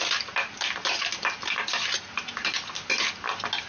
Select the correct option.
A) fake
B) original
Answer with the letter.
B